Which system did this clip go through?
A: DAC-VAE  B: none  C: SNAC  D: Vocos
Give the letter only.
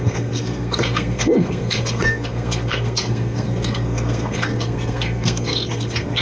C